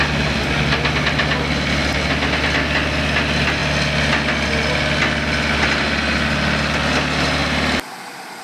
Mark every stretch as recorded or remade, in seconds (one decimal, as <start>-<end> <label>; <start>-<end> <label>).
0.0-8.4 recorded